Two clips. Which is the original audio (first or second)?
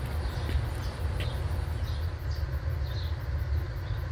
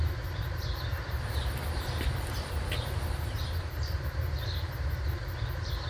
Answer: first